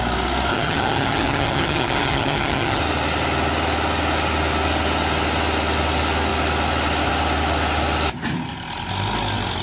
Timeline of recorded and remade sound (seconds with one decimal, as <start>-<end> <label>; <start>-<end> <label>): 0.0-0.5 recorded; 0.5-2.8 remade; 2.8-9.6 recorded